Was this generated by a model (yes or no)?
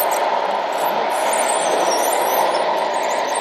no